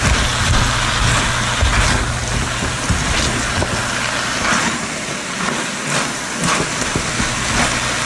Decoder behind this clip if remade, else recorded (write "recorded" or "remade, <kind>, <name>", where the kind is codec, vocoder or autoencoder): recorded